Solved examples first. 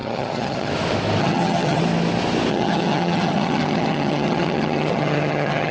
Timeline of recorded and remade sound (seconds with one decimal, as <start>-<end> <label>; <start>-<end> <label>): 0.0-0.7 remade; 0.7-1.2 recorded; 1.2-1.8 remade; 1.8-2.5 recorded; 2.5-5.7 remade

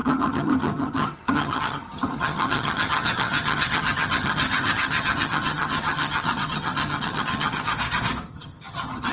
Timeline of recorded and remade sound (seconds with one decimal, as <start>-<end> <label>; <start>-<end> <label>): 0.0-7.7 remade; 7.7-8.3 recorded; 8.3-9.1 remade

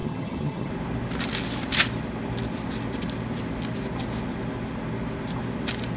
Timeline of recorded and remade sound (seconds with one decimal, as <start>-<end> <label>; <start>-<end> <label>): 0.0-0.7 remade; 0.7-6.0 recorded

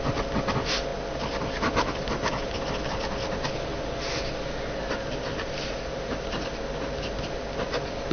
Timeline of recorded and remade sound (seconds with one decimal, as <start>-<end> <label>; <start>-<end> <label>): 0.0-8.1 recorded

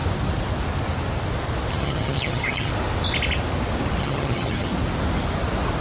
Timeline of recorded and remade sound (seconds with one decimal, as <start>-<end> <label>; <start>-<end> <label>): 0.0-1.7 recorded; 1.7-2.7 remade; 2.7-4.0 recorded; 4.0-4.7 remade; 4.7-5.8 recorded

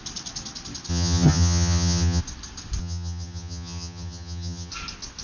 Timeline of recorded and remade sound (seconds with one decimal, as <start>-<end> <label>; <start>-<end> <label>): 0.0-0.9 recorded; 0.9-2.2 remade; 2.2-2.8 recorded; 2.8-4.7 remade; 4.7-5.2 recorded

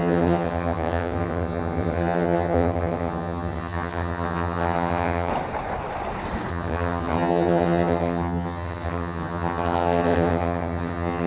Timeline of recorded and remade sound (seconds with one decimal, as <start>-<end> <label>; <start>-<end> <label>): 0.0-5.3 remade; 5.3-6.5 recorded; 6.5-11.3 remade